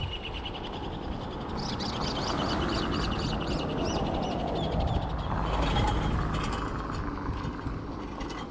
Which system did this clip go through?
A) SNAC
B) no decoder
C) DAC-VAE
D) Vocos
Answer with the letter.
B